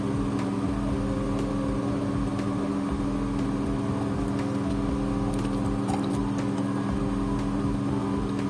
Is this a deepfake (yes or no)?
no